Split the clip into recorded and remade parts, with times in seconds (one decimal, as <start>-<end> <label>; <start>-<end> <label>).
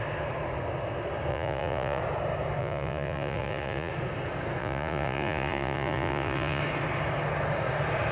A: 0.0-1.3 recorded; 1.3-2.0 remade; 2.0-2.6 recorded; 2.6-3.9 remade; 3.9-4.6 recorded; 4.6-6.6 remade; 6.6-8.1 recorded